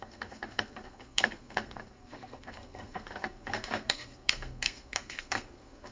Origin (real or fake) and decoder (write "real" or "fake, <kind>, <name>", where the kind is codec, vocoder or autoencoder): fake, codec, SNAC